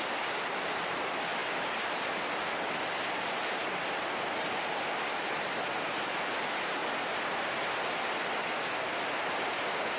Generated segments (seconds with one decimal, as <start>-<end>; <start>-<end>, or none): none